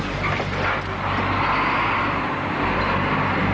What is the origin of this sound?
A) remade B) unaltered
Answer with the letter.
B